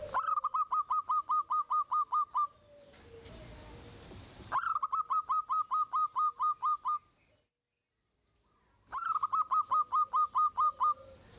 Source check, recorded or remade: recorded